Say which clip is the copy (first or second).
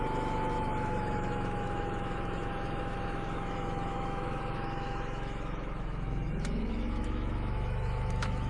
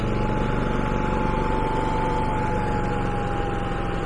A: first